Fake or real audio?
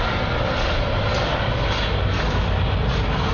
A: real